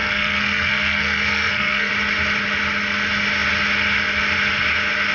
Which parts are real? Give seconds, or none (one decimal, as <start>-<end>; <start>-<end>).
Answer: 1.9-5.1